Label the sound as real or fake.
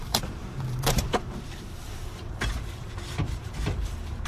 fake